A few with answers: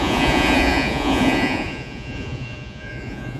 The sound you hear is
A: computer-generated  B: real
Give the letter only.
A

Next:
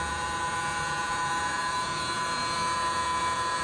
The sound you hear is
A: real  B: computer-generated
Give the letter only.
B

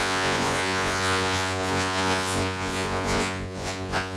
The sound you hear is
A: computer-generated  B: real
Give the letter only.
A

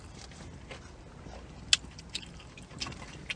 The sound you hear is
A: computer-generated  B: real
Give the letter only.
B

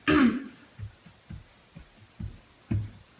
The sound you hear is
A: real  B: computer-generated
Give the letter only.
A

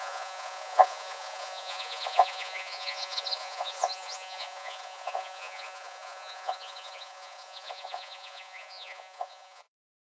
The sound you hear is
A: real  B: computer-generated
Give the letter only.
B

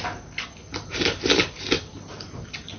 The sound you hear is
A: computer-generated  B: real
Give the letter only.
B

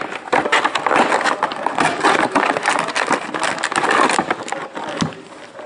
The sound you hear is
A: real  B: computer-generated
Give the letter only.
A